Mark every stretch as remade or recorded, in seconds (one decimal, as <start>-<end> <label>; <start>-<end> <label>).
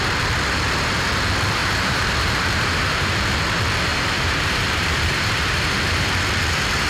0.0-1.6 recorded; 1.6-3.2 remade; 3.2-3.9 recorded; 3.9-6.1 remade; 6.1-6.9 recorded